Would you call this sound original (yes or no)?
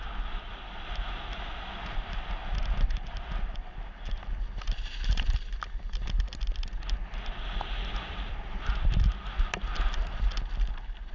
yes